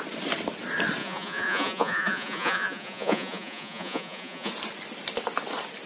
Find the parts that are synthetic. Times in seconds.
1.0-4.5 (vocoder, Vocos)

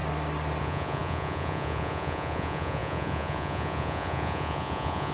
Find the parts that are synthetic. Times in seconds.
0.6-5.1 (vocoder, Vocos)

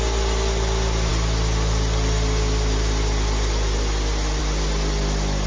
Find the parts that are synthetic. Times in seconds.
none

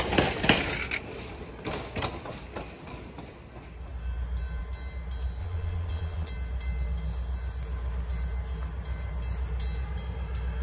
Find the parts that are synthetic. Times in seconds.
5.4-6.3 (vocoder, Vocos)

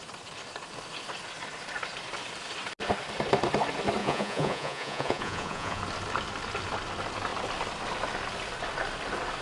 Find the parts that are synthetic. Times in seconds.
4.0-5.8 (vocoder, Vocos)

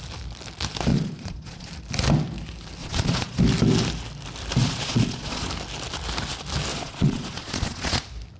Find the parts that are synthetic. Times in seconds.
0.9-1.7 (vocoder, Vocos); 2.8-3.4; 4.6-5.5; 6.7-8.0

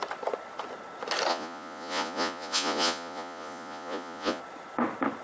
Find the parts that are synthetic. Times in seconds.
1.3-4.4 (vocoder, Vocos)